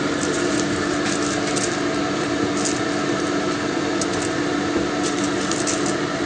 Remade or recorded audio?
recorded